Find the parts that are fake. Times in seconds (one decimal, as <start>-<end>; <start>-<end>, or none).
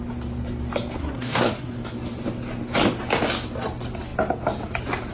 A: 1.0-1.7